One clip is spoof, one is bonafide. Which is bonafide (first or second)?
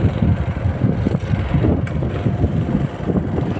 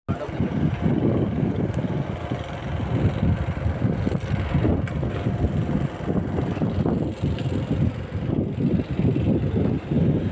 second